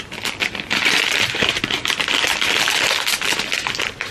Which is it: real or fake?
real